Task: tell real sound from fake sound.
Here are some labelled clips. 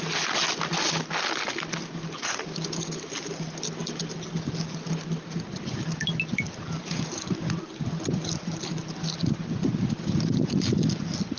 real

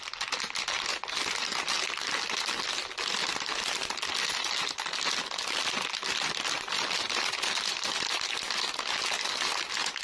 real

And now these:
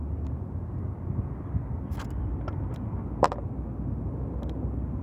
real